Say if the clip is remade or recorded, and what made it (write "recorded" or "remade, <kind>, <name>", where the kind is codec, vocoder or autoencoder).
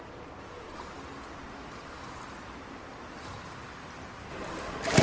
recorded